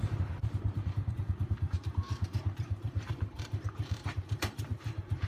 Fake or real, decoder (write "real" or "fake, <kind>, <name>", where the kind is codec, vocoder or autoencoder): fake, vocoder, BigVGAN v2